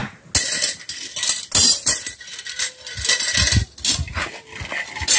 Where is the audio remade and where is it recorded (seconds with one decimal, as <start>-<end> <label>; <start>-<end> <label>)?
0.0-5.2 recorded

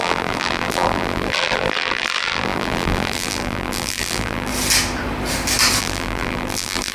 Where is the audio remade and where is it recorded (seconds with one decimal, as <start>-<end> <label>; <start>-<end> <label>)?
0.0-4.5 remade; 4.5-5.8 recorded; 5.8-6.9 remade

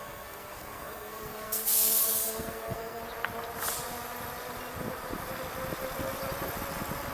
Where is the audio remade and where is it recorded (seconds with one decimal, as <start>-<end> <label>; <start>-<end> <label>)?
0.0-3.0 remade; 3.0-7.1 recorded